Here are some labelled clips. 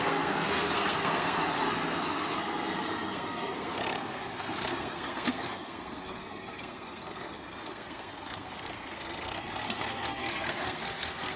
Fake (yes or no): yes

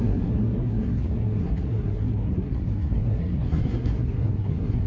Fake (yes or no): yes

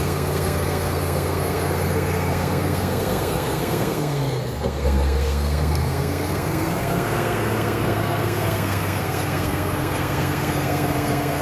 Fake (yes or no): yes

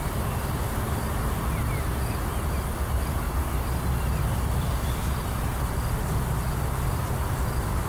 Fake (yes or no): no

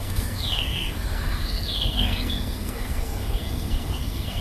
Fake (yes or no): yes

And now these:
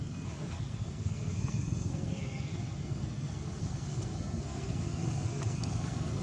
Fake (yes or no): yes